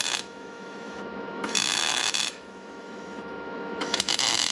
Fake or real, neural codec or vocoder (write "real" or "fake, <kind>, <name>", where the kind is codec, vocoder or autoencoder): fake, autoencoder, DAC-VAE